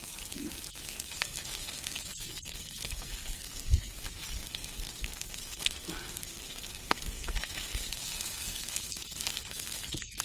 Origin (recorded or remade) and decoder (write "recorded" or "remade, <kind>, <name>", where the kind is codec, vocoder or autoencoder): remade, codec, SNAC